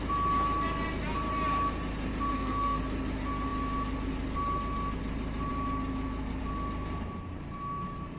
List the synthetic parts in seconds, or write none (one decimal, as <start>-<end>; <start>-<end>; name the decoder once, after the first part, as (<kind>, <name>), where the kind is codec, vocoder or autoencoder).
2.3-2.8 (codec, SNAC)